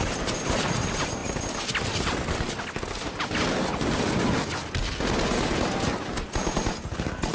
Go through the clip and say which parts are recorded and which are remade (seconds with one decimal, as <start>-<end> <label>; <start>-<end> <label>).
0.0-7.3 recorded